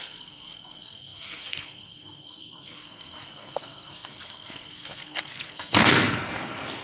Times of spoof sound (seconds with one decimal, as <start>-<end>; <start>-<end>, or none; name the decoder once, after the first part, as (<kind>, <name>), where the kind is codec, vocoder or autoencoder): 0.0-6.8 (codec, SNAC)